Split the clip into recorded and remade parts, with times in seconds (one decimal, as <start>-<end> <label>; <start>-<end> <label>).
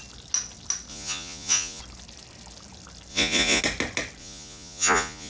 0.0-0.9 recorded; 0.9-1.8 remade; 1.8-3.1 recorded; 3.1-3.6 remade; 3.6-4.2 recorded; 4.2-5.3 remade